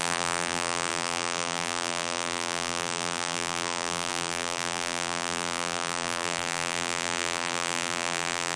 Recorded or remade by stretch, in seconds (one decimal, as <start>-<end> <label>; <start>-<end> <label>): 0.0-8.6 remade